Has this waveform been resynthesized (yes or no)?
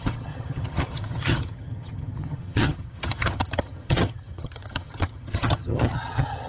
yes